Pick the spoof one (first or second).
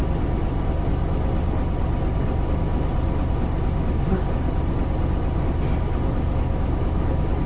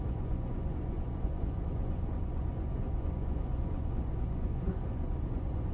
second